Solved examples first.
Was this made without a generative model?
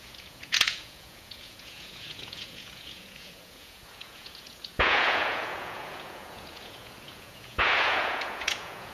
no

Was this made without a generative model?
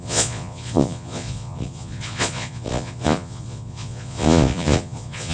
no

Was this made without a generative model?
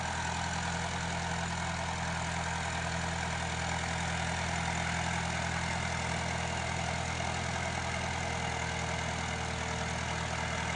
yes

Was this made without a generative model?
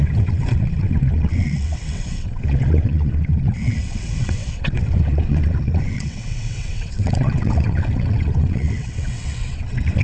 no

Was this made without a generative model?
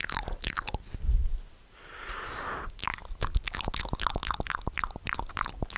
yes